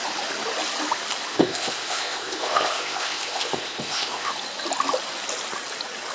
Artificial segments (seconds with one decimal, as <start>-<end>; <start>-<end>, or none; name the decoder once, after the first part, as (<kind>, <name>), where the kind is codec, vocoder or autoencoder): 1.3-4.3 (codec, ZipCodec)